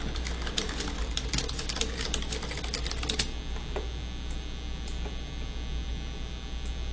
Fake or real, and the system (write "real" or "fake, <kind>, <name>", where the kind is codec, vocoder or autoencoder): real